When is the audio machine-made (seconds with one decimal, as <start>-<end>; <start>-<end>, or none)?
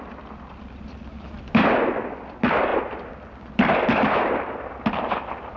none